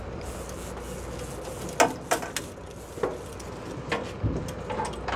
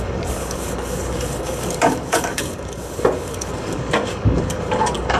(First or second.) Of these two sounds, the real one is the first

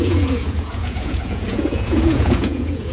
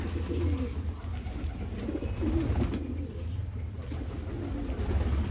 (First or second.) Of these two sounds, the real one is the second